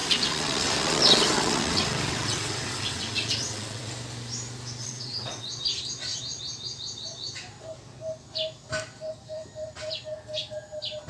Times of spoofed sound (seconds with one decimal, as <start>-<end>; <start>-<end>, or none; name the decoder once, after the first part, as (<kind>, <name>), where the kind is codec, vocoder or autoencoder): 0.0-3.9 (vocoder, WaveNeXt); 4.8-5.5